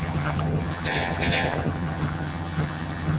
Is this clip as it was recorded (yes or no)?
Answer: no